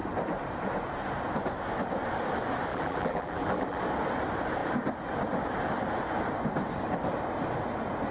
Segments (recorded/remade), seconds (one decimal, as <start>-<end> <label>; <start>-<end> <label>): 0.0-2.7 recorded; 2.7-3.8 remade; 3.8-8.1 recorded